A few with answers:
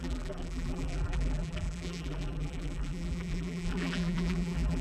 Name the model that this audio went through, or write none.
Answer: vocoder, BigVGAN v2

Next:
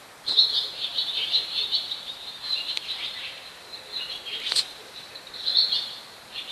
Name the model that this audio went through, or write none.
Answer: vocoder, BigVGAN v2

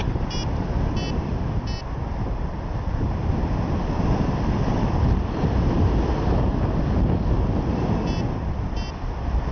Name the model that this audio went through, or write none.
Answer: none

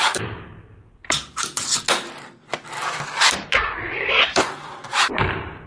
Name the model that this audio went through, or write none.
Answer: vocoder, BigVGAN v2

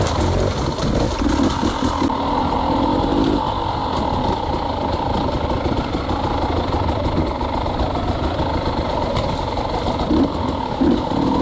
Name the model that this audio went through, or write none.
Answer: none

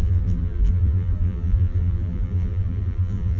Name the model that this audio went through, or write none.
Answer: vocoder, BigVGAN v2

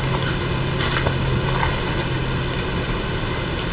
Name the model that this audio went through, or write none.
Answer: none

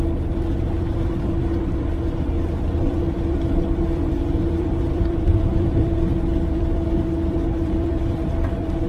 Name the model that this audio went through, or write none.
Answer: vocoder, BigVGAN v2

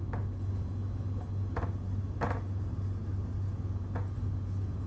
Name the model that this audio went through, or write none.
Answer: none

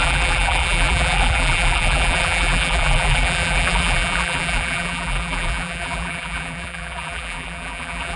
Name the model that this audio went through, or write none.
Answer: vocoder, BigVGAN v2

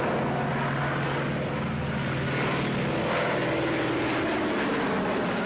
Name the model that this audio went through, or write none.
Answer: none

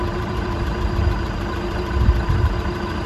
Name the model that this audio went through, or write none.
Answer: vocoder, BigVGAN v2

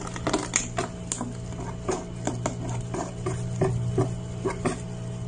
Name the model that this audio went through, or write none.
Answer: none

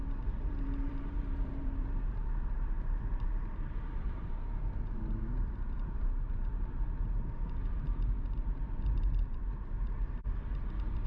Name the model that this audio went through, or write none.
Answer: vocoder, BigVGAN v2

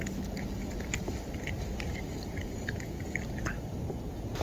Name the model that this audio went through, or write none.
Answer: none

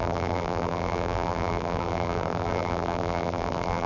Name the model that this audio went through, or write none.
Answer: vocoder, BigVGAN v2